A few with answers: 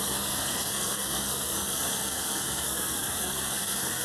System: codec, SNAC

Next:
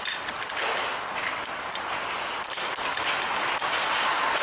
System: none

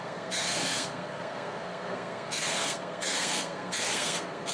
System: codec, SNAC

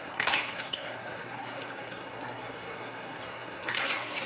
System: codec, SNAC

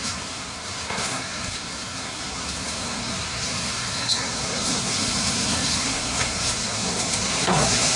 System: codec, SNAC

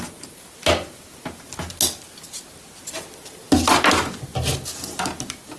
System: none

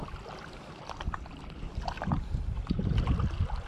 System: none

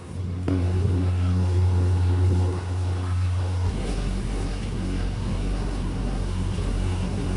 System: codec, SNAC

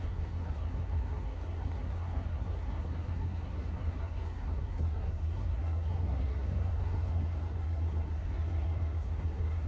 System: codec, SNAC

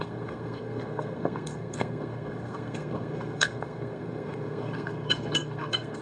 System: codec, SNAC